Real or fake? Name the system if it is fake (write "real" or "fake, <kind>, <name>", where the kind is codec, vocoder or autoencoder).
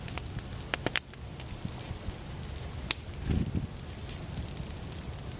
real